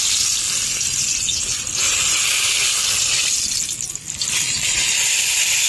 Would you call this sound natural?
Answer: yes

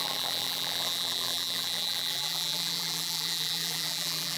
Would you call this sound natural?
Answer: no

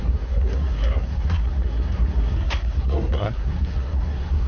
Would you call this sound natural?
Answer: no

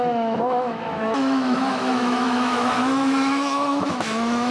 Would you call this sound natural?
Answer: no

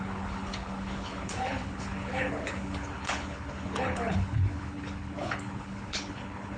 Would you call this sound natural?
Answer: no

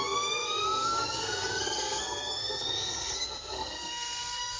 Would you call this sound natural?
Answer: no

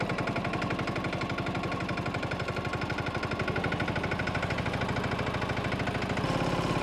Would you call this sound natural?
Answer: yes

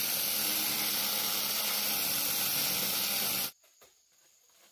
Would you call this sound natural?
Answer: yes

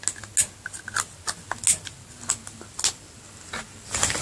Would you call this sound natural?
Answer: yes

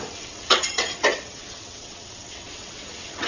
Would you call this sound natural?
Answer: no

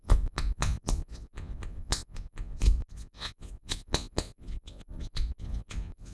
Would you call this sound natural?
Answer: no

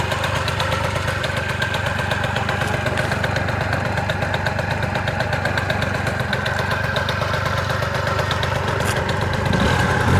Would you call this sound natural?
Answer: yes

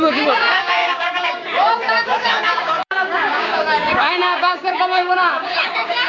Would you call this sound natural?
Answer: no